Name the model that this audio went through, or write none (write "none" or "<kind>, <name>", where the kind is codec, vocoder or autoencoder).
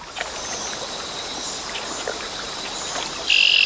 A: none